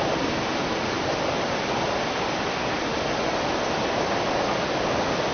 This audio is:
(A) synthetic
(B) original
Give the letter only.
B